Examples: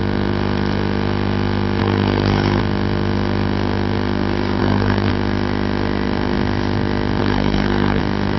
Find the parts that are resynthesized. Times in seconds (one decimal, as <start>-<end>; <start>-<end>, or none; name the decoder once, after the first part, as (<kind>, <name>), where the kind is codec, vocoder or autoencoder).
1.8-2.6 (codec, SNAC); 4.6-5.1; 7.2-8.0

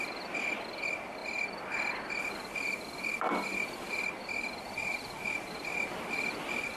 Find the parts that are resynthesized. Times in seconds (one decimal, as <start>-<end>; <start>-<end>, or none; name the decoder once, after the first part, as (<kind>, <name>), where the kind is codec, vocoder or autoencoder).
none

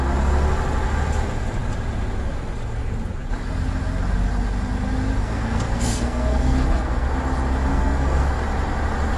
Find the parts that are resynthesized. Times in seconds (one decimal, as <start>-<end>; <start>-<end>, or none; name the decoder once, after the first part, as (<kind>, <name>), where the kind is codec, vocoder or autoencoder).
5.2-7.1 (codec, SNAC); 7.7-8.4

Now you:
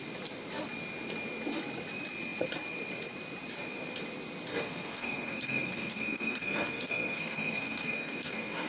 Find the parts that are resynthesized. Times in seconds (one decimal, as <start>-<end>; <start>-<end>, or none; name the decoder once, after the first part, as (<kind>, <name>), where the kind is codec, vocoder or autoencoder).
4.5-8.7 (codec, SNAC)

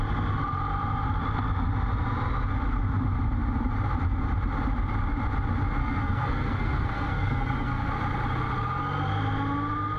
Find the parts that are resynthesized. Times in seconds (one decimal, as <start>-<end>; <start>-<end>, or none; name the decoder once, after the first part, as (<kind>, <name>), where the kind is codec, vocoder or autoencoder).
5.8-7.9 (codec, SNAC)